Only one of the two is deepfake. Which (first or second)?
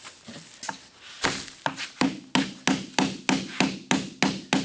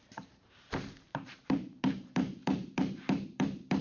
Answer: second